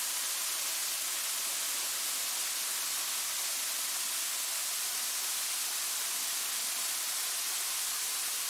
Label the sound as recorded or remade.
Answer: recorded